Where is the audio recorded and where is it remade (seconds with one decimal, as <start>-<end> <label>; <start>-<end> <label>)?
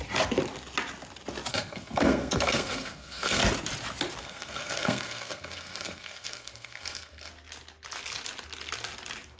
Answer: 0.0-1.5 recorded; 1.5-3.4 remade; 3.4-4.2 recorded; 4.2-7.3 remade; 7.3-9.4 recorded